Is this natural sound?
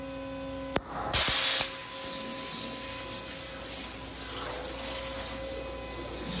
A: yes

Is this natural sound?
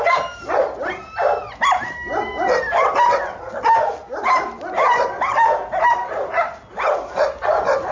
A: yes